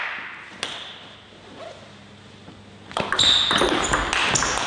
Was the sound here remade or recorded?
recorded